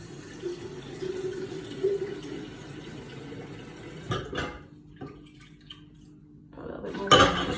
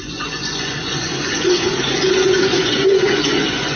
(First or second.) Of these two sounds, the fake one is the second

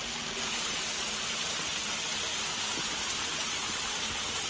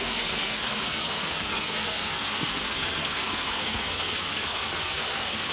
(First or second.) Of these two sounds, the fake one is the second